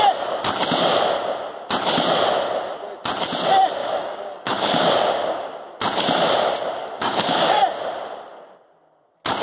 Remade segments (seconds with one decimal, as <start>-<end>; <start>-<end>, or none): 3.8-4.9; 6.8-7.6